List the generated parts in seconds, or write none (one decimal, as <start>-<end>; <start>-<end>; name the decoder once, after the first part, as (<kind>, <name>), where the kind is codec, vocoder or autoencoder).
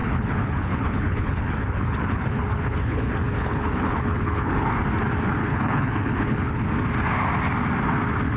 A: 0.0-4.7 (codec, HILCodec); 5.4-6.6